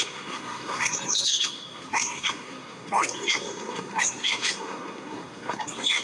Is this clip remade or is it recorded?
remade